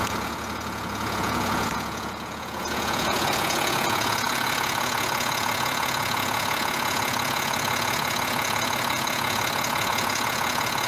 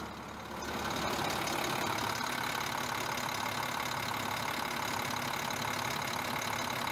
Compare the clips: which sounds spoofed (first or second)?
first